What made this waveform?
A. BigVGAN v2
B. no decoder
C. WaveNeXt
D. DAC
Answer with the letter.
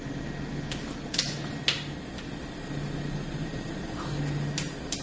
B